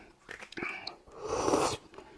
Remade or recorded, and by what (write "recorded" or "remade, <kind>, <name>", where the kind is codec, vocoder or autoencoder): recorded